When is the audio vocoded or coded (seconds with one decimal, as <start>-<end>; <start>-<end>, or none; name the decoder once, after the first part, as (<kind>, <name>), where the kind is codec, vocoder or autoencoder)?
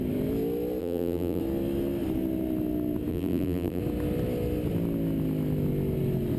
0.8-1.4 (vocoder, BigVGAN v2); 3.1-3.8